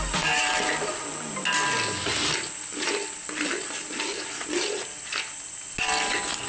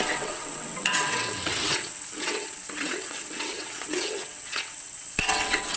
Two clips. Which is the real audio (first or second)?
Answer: first